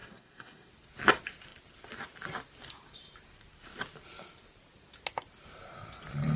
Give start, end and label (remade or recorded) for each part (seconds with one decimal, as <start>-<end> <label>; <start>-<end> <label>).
0.0-0.7 remade; 0.7-6.4 recorded